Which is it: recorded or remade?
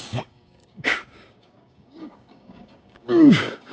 remade